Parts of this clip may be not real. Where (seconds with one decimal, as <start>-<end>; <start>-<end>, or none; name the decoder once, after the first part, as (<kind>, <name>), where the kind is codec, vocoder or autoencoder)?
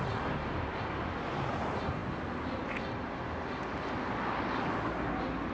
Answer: none